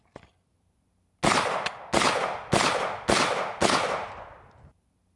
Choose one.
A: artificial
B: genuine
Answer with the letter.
B